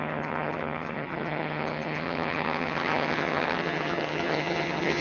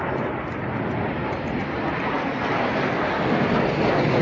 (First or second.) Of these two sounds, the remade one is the first